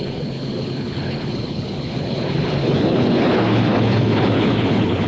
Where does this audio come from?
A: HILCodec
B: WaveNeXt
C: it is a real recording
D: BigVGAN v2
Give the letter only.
A